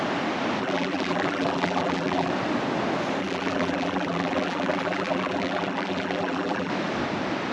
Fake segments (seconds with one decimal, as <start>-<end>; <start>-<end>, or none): 0.6-2.3; 3.2-6.7